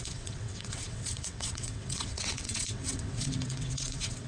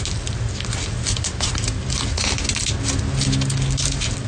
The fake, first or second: first